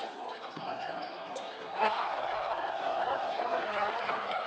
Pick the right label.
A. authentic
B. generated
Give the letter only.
B